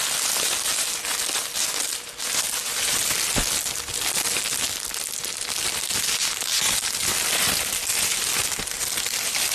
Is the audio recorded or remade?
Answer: recorded